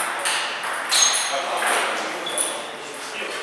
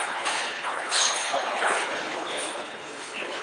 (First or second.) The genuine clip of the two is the first